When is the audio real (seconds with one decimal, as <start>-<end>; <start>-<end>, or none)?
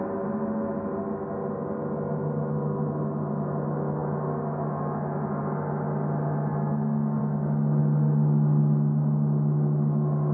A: 0.0-10.3